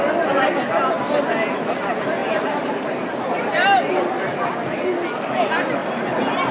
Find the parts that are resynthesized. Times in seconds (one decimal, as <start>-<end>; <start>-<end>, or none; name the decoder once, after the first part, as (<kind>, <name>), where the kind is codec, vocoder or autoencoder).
2.2-3.8 (vocoder, BigVGAN v2); 5.8-6.5